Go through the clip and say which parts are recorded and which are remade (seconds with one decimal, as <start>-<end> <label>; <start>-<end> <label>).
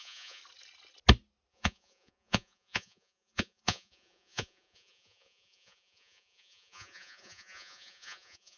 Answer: 0.0-0.4 remade; 0.4-1.5 recorded; 1.5-8.6 remade